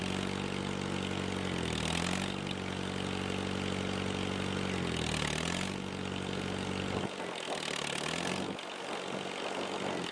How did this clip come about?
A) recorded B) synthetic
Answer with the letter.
A